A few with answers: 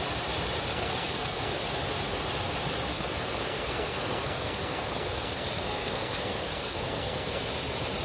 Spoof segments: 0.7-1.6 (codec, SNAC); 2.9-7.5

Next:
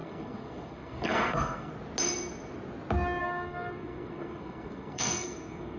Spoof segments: 0.0-1.7 (codec, SNAC); 3.2-5.8

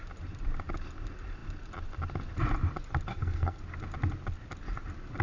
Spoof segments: 3.1-3.6 (codec, SNAC)

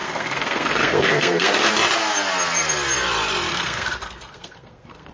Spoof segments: 0.0-1.7 (codec, SNAC); 3.5-5.1

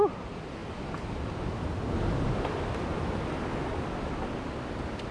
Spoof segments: none